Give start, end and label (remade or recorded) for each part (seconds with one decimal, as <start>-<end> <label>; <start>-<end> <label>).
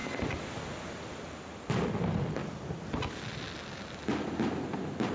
0.0-5.1 recorded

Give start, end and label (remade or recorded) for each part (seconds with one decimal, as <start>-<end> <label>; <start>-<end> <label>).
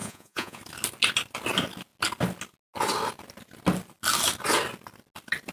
0.0-0.6 remade; 0.6-5.5 recorded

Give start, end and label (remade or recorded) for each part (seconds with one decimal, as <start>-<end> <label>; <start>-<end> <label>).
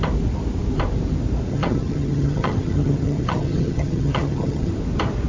0.0-1.5 recorded; 1.5-4.7 remade; 4.7-5.3 recorded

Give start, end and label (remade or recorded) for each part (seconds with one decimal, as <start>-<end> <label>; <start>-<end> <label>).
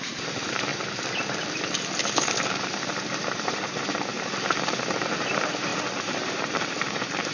0.0-0.7 remade; 0.7-2.8 recorded; 2.8-4.1 remade; 4.1-5.0 recorded; 5.0-7.3 remade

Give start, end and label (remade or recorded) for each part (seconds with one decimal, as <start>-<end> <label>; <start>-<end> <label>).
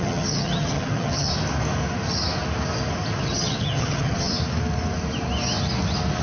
0.0-1.3 remade; 1.3-3.2 recorded; 3.2-4.3 remade; 4.3-6.2 recorded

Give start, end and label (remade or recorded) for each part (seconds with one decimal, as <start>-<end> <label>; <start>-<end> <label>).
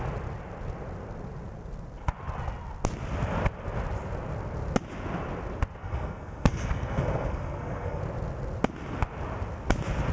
0.0-5.8 recorded; 5.8-8.0 remade; 8.0-10.1 recorded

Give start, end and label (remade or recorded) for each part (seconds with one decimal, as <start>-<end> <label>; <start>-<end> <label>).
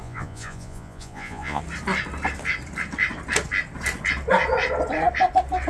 0.0-1.6 remade; 1.6-5.7 recorded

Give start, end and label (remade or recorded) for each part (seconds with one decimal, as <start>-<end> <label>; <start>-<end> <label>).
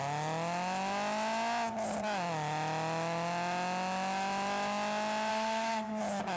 0.0-5.3 recorded; 5.3-6.0 remade; 6.0-6.4 recorded